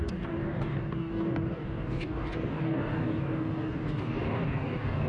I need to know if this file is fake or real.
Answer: fake